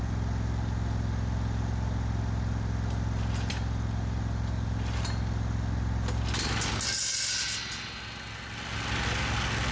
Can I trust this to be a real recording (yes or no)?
yes